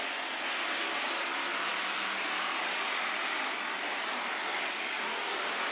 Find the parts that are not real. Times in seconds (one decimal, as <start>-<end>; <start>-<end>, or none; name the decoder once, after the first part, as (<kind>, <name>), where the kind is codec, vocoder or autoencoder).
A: none